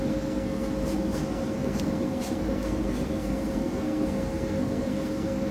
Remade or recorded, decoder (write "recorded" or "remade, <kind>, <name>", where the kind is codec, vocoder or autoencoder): remade, codec, SNAC